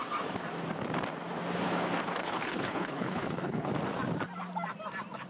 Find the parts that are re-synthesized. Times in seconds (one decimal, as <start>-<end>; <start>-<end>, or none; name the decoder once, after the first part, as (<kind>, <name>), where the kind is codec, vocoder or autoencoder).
2.2-3.7 (codec, HILCodec)